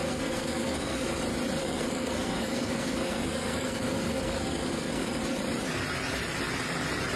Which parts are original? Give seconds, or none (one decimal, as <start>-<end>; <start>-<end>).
1.2-1.6; 5.2-7.2